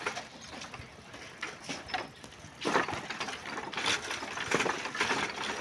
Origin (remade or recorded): recorded